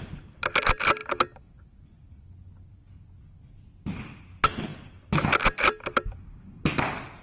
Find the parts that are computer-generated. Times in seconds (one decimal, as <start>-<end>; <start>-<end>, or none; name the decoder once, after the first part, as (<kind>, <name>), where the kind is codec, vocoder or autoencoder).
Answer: none